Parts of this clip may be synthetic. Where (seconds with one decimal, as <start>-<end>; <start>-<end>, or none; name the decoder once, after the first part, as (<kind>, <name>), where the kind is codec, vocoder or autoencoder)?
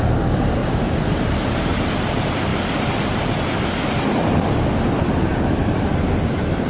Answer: 0.6-1.9 (vocoder, BigVGAN v2); 5.3-6.7